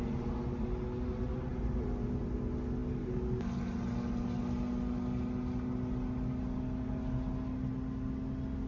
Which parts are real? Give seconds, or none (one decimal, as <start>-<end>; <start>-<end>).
0.0-8.7